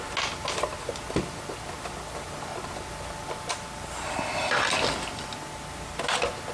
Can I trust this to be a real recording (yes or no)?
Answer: yes